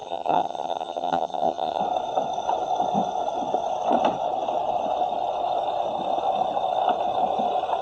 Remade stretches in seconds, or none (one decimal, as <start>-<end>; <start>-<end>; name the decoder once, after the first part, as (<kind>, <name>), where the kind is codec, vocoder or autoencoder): 0.0-1.8 (vocoder, HiFi-GAN)